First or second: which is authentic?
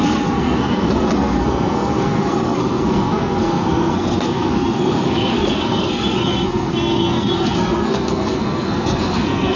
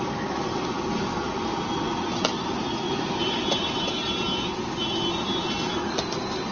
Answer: second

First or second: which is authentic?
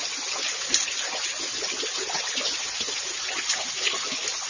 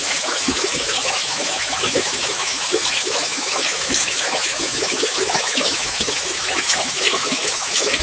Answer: first